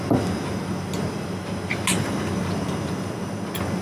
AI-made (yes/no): no